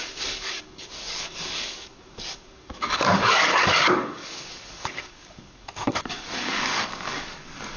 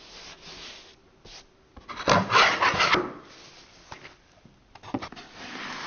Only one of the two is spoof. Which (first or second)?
first